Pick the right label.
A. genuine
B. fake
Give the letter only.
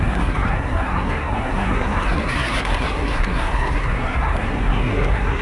B